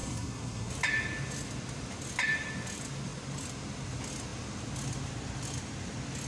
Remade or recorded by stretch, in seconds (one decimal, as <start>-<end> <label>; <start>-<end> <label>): 0.0-0.7 remade; 0.7-6.3 recorded